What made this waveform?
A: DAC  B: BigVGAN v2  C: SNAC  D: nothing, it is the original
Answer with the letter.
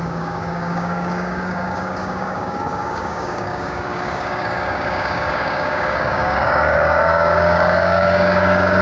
A